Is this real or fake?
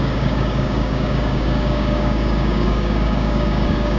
fake